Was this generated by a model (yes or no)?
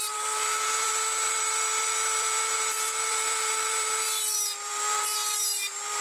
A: yes